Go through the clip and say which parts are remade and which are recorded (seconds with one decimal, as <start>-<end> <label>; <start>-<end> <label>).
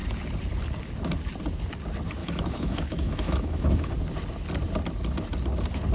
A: 0.0-2.2 recorded; 2.2-3.9 remade; 3.9-5.9 recorded